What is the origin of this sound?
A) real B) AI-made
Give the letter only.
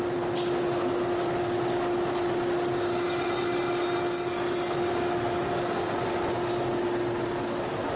A